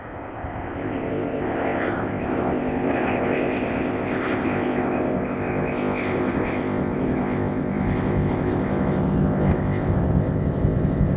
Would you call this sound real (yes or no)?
no